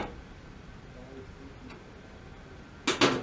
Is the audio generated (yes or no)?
no